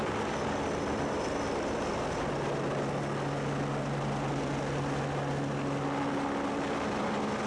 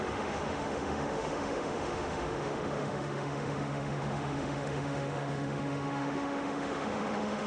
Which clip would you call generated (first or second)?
second